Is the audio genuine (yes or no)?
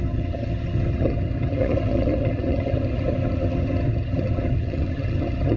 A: no